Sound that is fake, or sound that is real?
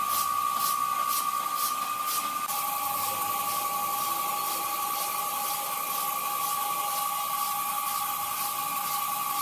real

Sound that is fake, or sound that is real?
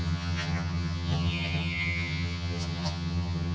fake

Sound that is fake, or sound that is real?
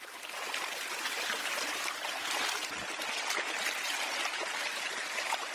real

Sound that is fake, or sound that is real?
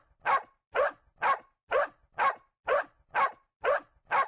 real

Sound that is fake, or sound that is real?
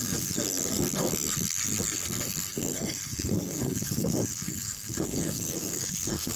fake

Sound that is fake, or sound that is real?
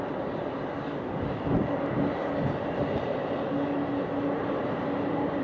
real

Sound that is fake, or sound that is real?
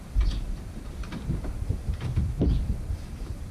fake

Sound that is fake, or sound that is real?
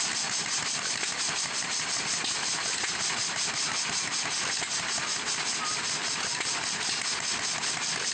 real